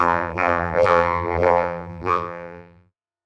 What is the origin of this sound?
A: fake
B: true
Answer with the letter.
A